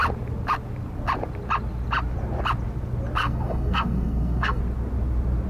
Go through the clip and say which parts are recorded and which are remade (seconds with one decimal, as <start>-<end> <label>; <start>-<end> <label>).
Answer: 0.0-3.2 recorded; 3.2-4.6 remade; 4.6-5.5 recorded